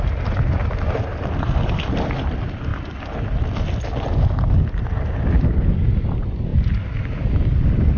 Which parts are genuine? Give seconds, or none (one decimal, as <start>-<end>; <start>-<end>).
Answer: 0.0-8.0